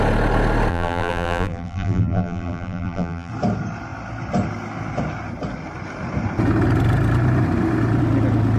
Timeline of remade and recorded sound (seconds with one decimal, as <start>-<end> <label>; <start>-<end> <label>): 0.0-0.7 recorded; 0.7-3.3 remade; 3.3-8.6 recorded